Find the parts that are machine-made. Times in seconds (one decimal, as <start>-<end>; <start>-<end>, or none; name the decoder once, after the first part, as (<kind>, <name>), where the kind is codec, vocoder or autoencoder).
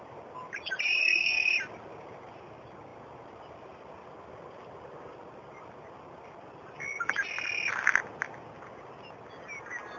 1.0-1.5 (codec, SNAC)